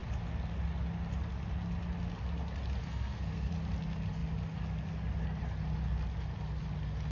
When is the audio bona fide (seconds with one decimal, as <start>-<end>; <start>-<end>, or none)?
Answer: 0.0-2.8; 3.5-7.1